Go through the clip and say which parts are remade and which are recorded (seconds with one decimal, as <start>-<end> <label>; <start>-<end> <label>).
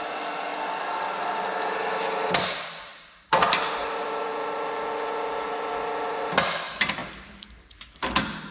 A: 0.0-0.5 remade; 0.5-1.4 recorded; 1.4-2.9 remade; 2.9-3.7 recorded; 3.7-4.3 remade; 4.3-6.6 recorded; 6.6-8.5 remade